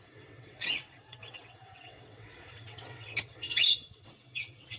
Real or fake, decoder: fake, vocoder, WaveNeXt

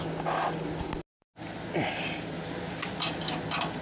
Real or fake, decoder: real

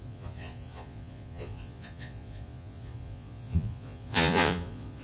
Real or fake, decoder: fake, vocoder, Vocos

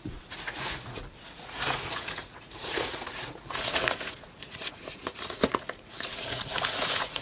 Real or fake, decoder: fake, vocoder, Vocos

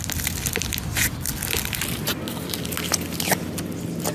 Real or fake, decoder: real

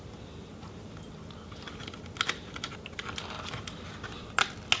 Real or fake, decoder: real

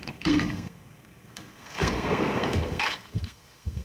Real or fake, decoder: fake, codec, SNAC